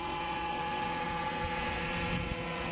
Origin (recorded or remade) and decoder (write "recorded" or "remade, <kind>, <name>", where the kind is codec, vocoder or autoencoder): remade, vocoder, WaveNeXt